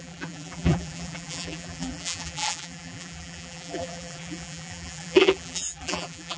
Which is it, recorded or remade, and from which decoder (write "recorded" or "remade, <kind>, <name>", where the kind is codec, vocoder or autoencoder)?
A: remade, vocoder, BigVGAN v2